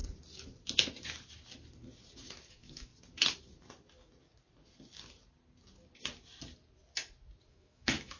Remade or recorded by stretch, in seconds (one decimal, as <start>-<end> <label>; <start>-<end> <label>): 0.0-2.5 recorded; 2.5-2.9 remade; 2.9-7.5 recorded; 7.5-8.2 remade